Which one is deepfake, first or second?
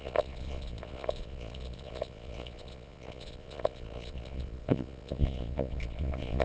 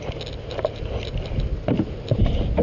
first